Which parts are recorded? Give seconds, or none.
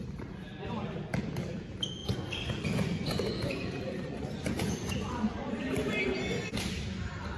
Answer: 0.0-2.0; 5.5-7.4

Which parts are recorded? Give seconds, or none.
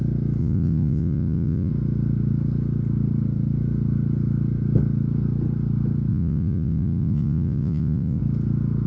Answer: 0.0-0.4; 1.7-6.1; 8.2-8.9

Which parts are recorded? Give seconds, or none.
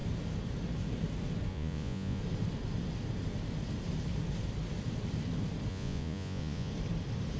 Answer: 0.0-1.5; 2.2-5.7; 6.7-7.4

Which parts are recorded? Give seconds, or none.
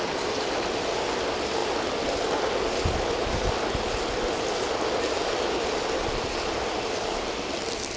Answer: 0.0-8.0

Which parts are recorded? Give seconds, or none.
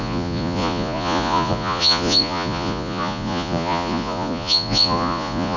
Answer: none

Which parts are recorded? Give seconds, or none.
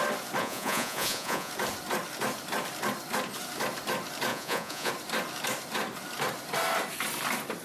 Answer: 0.0-0.4; 1.5-4.3; 4.9-7.6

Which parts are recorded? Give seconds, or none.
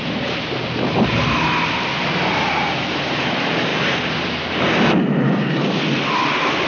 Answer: 0.0-6.7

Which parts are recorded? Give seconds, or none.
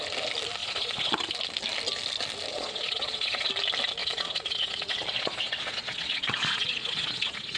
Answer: 0.0-0.6; 1.2-2.5; 3.5-4.0